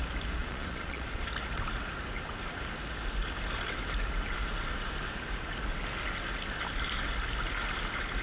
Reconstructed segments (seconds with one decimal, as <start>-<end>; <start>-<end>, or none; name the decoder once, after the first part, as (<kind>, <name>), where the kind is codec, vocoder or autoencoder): 0.4-1.3 (vocoder, Vocos)